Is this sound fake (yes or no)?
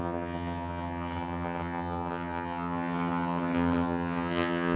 yes